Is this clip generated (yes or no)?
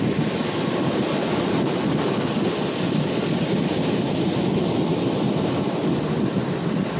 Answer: no